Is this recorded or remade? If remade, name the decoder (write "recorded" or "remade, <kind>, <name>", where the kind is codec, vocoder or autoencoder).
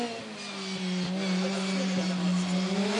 recorded